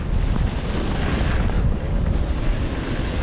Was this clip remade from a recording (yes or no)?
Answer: no